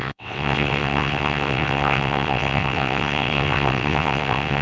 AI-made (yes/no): yes